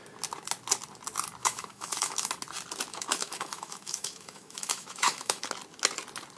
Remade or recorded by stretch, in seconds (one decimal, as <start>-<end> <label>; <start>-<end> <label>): 0.0-1.4 recorded; 1.4-2.3 remade; 2.3-2.9 recorded; 2.9-5.5 remade; 5.5-6.4 recorded